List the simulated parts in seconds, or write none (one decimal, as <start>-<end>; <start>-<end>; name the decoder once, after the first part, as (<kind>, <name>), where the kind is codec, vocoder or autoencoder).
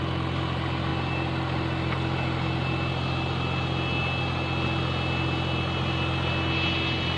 none